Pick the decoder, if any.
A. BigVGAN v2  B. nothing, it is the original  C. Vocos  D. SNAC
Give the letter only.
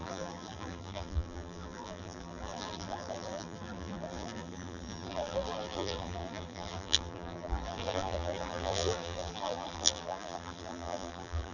A